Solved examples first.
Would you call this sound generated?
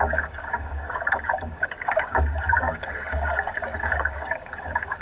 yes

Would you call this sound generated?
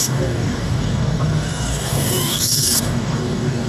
yes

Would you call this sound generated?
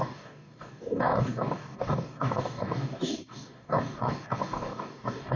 yes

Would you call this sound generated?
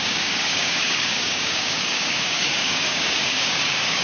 yes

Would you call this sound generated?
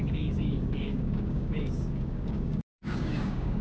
yes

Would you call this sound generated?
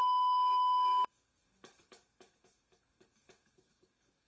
yes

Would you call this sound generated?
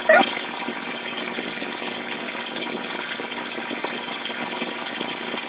yes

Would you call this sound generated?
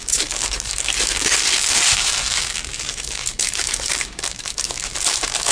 yes